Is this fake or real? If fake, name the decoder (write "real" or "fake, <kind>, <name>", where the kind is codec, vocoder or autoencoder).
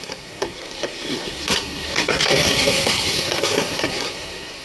fake, codec, SNAC